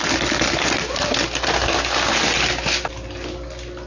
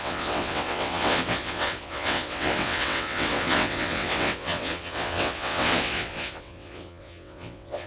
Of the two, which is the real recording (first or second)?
first